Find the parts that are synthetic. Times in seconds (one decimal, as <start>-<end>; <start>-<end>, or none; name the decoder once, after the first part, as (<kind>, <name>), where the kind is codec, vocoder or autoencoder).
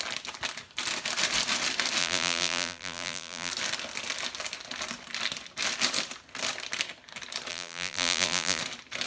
2.0-3.5 (vocoder, BigVGAN v2); 7.5-8.6